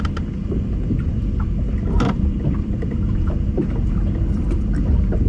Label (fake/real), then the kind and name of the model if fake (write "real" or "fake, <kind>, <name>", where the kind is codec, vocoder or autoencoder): fake, vocoder, BigVGAN v2